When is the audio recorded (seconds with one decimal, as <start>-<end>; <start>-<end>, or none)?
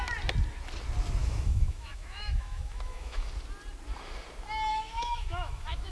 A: 0.0-1.2; 3.3-4.7